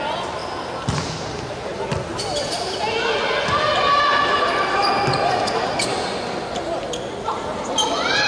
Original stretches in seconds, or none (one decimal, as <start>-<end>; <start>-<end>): 0.0-8.3